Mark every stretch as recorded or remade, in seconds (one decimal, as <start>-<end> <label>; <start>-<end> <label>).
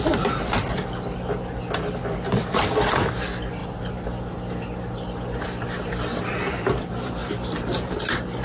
0.0-0.8 remade; 0.8-2.0 recorded; 2.0-3.6 remade; 3.6-6.2 recorded; 6.2-8.4 remade